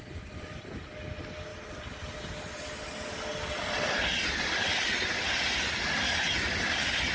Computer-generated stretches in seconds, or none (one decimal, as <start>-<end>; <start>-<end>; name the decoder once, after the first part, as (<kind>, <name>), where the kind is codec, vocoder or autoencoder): none